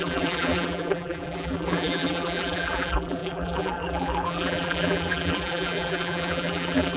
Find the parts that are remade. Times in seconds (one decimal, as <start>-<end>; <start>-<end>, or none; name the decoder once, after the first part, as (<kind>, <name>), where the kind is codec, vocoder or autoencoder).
0.0-7.0 (vocoder, BigVGAN v2)